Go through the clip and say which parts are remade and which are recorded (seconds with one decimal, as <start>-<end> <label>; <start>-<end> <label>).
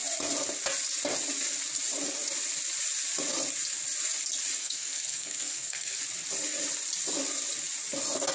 0.0-4.6 recorded; 4.6-6.0 remade; 6.0-8.3 recorded